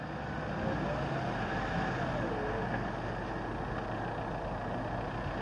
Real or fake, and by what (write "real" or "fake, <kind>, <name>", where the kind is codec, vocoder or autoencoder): real